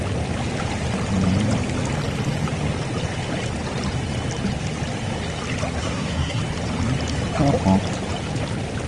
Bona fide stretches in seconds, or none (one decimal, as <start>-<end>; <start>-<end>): 0.0-5.8; 6.4-8.9